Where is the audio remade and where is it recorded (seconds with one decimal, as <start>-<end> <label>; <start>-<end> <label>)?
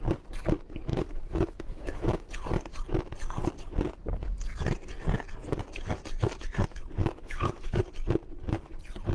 0.0-0.9 recorded; 0.9-2.3 remade; 2.3-7.0 recorded; 7.0-7.8 remade; 7.8-9.1 recorded